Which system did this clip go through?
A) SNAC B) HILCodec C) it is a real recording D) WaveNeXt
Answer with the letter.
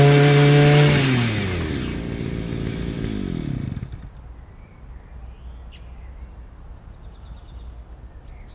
C